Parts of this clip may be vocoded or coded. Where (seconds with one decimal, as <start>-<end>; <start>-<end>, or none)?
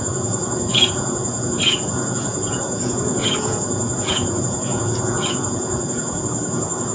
0.0-6.9